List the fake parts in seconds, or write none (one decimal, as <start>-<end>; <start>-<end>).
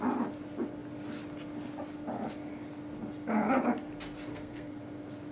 4.3-4.8